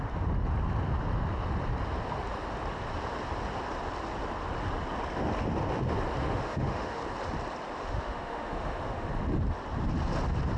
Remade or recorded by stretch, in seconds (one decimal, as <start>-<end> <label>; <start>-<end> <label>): 0.0-6.2 recorded; 6.2-7.0 remade; 7.0-7.8 recorded; 7.8-9.1 remade; 9.1-10.6 recorded